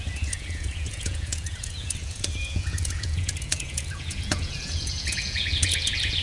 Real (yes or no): no